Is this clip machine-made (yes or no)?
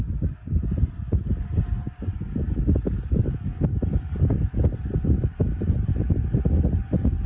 no